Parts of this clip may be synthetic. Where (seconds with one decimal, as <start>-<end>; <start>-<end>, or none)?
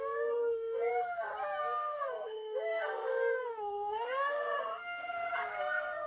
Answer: 0.0-0.9; 1.6-6.1